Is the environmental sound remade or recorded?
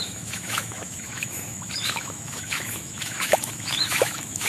remade